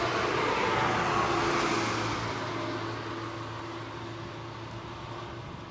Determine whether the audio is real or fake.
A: real